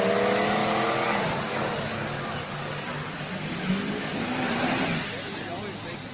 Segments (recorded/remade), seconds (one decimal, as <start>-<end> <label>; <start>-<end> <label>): 0.0-1.9 recorded; 1.9-4.5 remade; 4.5-6.1 recorded